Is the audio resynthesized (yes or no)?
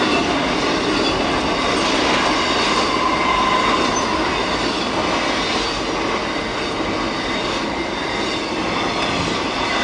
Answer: no